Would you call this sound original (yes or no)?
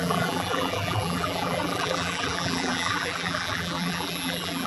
no